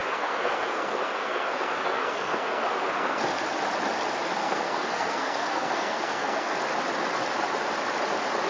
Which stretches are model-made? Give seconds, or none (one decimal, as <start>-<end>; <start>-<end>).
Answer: 0.0-3.2; 4.4-6.6